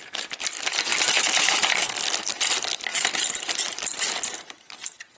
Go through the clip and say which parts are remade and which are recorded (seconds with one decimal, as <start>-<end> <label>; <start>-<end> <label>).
0.0-0.9 recorded; 0.9-1.9 remade; 1.9-2.9 recorded; 2.9-3.4 remade; 3.4-5.2 recorded